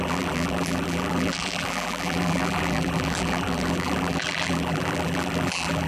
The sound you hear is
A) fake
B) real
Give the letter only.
A